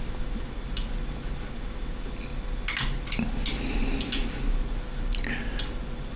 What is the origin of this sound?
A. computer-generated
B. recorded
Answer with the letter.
B